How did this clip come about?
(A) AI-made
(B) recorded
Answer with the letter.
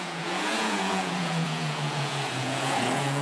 A